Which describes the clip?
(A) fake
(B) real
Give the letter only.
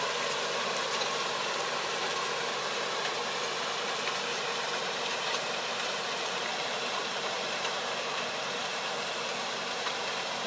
A